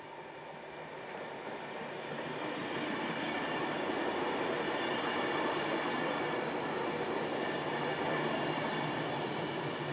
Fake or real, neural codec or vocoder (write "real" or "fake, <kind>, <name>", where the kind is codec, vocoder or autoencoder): real